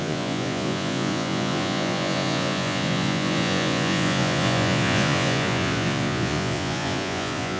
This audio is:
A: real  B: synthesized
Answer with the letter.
B